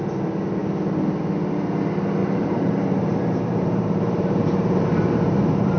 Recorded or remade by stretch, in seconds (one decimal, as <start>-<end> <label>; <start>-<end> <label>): 0.0-2.2 recorded; 2.2-5.8 remade